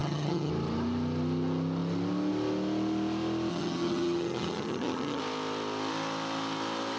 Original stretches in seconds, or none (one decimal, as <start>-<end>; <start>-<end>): 0.5-3.5; 5.2-7.0

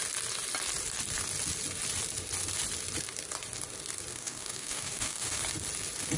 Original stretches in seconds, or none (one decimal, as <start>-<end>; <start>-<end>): 0.0-4.1; 5.4-6.2